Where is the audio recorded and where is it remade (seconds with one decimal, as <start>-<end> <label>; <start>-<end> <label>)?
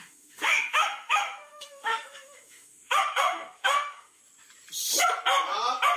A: 0.0-4.2 remade; 4.2-6.0 recorded